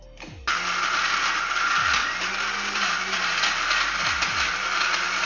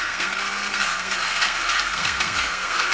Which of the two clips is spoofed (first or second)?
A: second